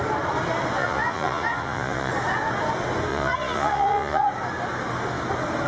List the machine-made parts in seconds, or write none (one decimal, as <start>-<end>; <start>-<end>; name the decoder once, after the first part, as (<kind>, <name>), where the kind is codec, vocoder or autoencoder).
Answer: 0.8-2.1 (vocoder, Vocos); 3.1-4.3